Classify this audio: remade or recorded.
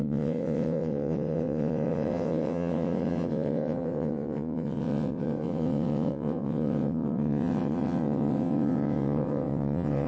remade